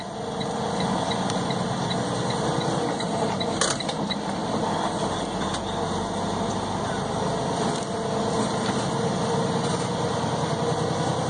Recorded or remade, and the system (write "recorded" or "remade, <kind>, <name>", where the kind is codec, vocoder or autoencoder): recorded